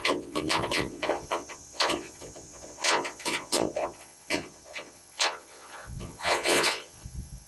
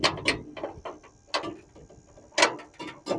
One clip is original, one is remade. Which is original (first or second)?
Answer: second